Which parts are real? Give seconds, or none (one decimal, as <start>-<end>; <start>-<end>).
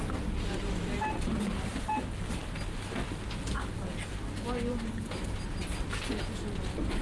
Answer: 0.0-7.0